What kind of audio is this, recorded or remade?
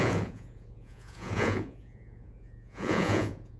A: remade